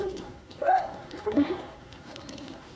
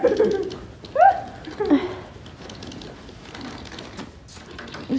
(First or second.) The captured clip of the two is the second